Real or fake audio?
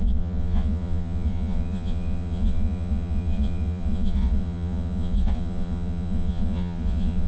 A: fake